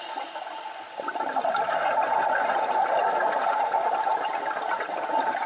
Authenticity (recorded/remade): recorded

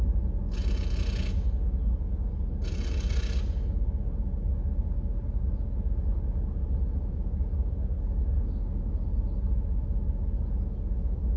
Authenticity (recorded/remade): recorded